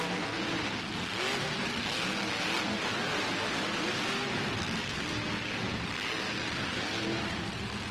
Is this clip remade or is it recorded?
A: recorded